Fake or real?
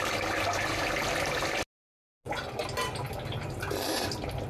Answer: real